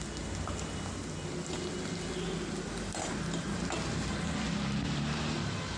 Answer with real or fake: real